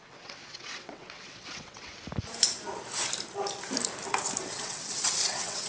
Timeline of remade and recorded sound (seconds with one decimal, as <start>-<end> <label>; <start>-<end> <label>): 0.0-1.9 remade; 1.9-4.5 recorded; 4.5-5.7 remade